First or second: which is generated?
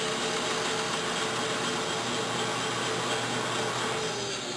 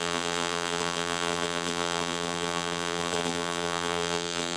second